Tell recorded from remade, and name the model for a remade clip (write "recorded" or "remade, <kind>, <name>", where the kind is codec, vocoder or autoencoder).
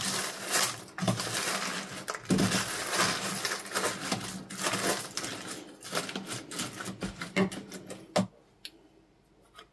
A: recorded